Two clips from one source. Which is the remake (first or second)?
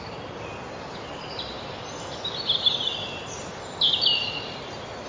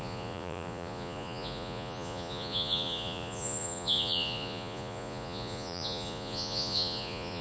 second